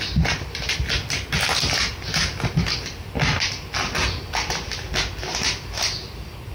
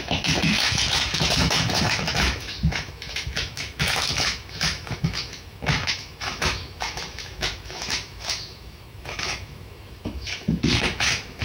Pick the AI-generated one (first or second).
second